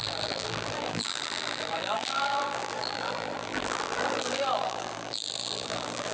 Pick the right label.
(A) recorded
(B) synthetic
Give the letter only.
B